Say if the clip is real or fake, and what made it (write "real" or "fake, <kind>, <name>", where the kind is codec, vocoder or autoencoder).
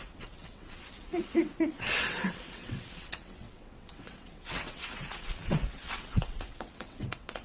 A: fake, vocoder, WaveNeXt